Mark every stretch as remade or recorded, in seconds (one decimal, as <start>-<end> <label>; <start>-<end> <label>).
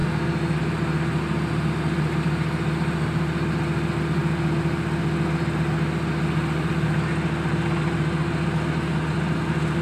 0.0-9.8 recorded